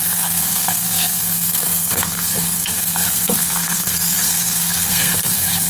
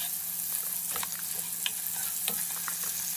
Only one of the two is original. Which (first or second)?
second